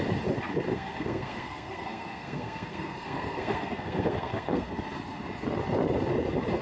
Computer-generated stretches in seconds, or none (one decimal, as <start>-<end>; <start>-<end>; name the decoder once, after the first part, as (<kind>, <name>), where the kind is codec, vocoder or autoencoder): 0.7-4.7 (codec, SNAC)